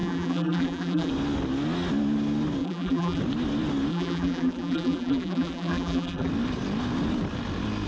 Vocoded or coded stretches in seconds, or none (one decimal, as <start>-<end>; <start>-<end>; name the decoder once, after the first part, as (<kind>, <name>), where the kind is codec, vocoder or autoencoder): 0.0-1.1 (vocoder, BigVGAN v2); 2.6-3.2; 3.9-6.3